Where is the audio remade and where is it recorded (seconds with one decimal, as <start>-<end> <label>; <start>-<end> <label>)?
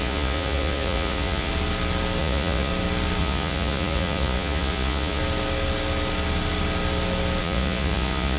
0.0-1.5 remade; 1.5-2.2 recorded; 2.2-2.7 remade; 2.7-3.2 recorded; 3.2-5.2 remade; 5.2-7.4 recorded; 7.4-8.4 remade